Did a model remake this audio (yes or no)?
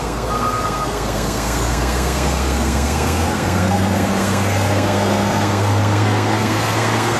yes